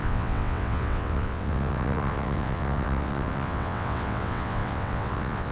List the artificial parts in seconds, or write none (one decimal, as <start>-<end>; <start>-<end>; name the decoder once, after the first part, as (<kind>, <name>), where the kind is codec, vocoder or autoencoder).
0.0-5.5 (vocoder, WaveNeXt)